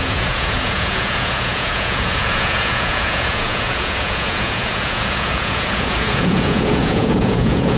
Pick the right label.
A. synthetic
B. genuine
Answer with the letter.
A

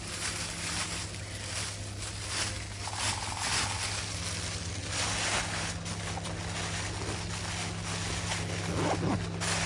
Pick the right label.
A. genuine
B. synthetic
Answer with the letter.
A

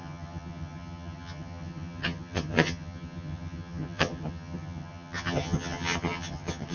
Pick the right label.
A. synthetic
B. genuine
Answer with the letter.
A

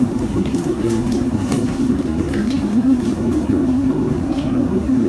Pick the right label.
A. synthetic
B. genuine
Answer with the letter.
A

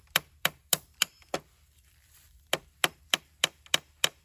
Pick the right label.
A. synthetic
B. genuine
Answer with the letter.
A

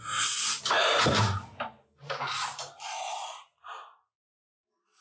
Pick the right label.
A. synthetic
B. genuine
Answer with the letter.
B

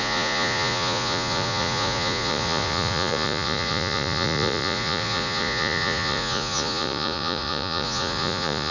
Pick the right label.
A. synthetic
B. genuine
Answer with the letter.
A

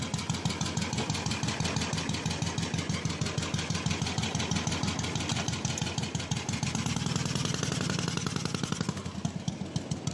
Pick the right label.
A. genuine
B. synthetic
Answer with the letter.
A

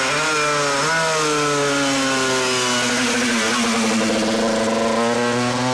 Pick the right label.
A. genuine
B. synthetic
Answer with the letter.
A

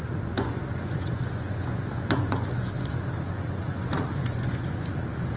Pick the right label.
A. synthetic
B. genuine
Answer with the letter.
A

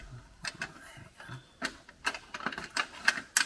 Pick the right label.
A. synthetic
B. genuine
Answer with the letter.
B